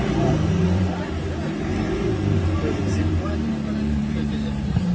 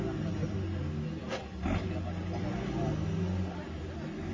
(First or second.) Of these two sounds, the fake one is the first